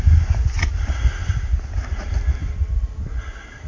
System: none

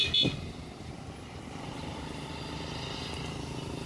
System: none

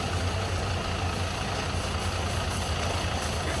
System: none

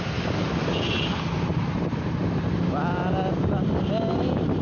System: none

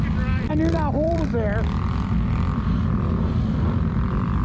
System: vocoder, BigVGAN v2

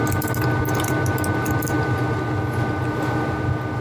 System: none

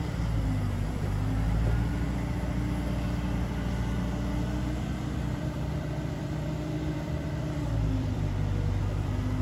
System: vocoder, BigVGAN v2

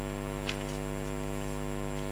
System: none